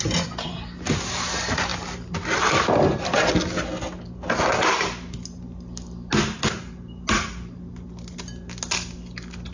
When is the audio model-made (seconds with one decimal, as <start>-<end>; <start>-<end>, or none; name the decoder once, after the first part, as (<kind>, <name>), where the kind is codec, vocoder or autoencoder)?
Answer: none